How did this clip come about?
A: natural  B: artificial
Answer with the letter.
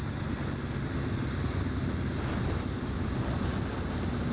A